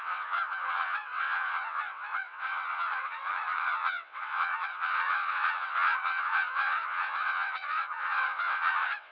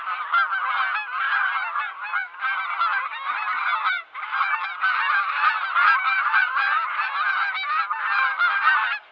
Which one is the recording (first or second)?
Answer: second